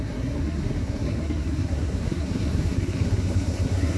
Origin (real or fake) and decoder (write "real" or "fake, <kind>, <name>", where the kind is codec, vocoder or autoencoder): fake, codec, SNAC